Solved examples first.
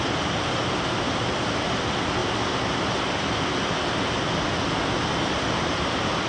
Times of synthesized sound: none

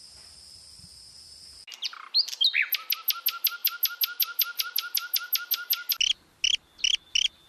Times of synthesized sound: none